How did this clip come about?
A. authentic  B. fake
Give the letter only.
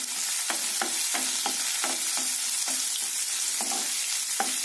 A